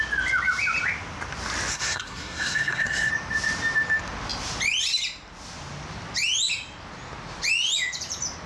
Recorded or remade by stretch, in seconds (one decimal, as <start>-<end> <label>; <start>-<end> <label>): 0.0-1.7 recorded; 1.7-3.1 remade; 3.1-8.5 recorded